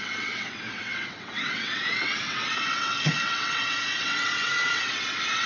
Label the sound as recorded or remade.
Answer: remade